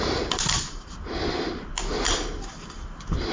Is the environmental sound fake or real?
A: real